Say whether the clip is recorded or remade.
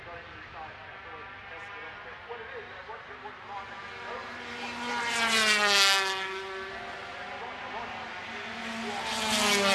recorded